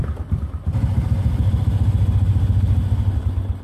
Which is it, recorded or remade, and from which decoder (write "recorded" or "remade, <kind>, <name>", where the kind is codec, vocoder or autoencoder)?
recorded